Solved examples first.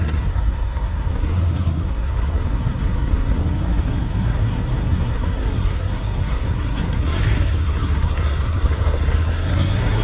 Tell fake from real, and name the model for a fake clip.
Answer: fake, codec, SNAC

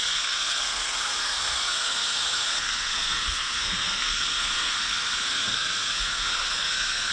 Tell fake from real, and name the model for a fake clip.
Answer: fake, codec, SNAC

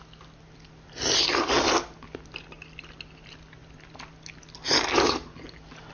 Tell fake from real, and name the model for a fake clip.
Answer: real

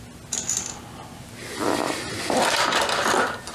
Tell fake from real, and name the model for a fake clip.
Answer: real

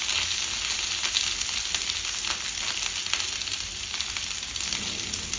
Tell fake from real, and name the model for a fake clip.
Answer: real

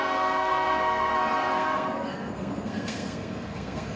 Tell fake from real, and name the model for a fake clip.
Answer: fake, codec, SNAC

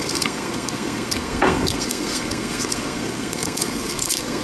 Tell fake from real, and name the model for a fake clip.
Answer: fake, codec, SNAC